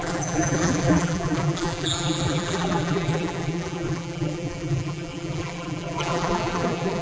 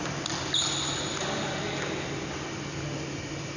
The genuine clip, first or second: second